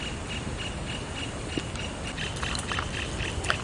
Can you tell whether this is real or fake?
real